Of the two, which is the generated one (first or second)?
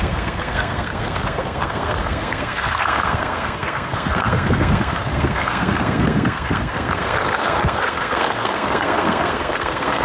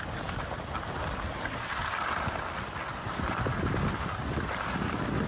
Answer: first